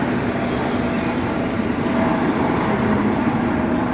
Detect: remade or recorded remade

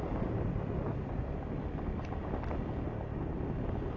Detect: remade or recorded recorded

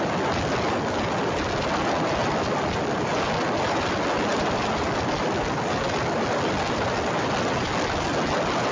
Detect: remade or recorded recorded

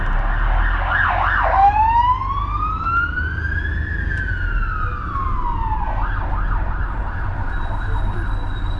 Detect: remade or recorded recorded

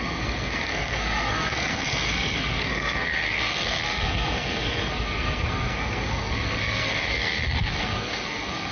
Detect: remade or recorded remade